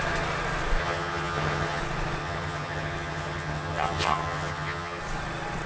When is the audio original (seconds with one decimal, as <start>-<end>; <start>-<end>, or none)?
0.0-0.8; 1.8-2.2; 5.0-5.7

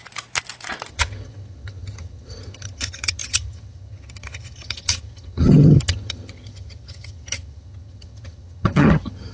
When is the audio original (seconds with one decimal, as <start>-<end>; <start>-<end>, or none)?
0.0-0.9

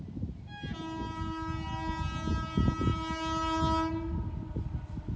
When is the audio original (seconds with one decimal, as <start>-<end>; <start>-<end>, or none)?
0.0-5.2

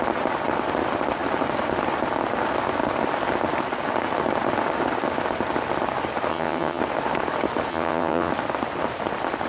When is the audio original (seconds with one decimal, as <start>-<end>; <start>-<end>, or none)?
0.0-6.3; 6.8-7.7; 8.3-9.5

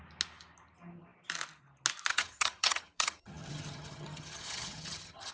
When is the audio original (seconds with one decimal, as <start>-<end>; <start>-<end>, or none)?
0.0-2.1

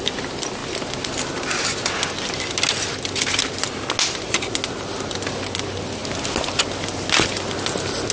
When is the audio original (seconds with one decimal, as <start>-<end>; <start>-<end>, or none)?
0.0-8.1